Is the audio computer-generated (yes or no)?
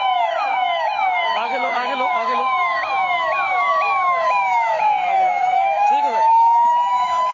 yes